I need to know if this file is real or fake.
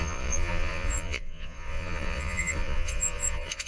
fake